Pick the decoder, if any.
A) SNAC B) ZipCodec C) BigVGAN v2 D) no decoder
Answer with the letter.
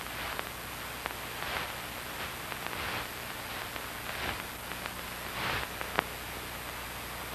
D